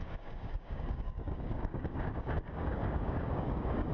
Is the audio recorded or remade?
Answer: remade